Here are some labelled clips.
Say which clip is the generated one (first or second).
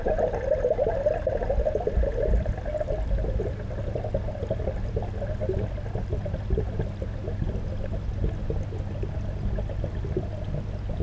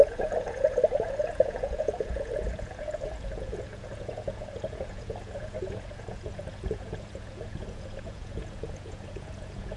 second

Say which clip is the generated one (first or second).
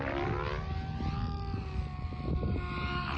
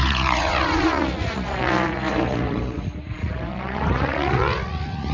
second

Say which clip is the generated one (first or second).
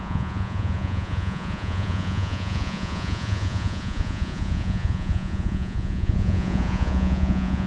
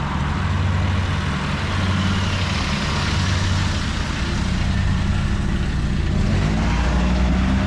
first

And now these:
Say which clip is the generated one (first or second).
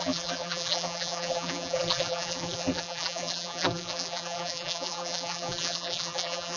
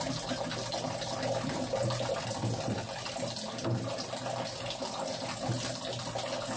first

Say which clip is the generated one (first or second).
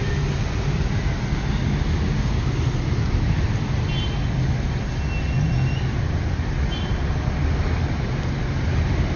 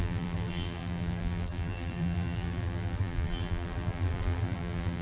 second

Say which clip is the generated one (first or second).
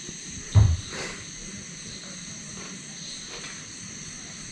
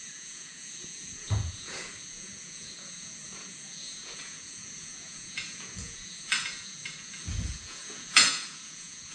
second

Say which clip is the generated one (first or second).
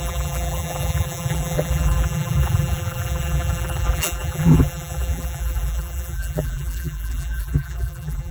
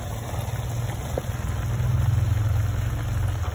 first